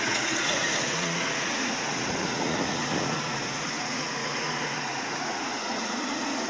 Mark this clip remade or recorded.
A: remade